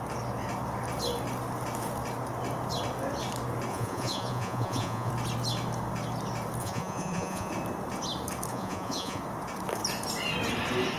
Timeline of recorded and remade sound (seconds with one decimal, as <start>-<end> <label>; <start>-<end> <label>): 0.0-3.7 recorded; 3.7-5.1 remade; 5.1-6.6 recorded; 6.6-7.5 remade; 7.5-8.5 recorded; 8.5-9.2 remade; 9.2-11.0 recorded